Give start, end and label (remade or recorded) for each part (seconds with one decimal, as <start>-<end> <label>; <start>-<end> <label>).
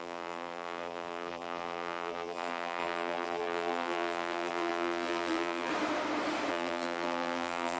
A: 0.0-5.7 remade; 5.7-6.5 recorded; 6.5-7.8 remade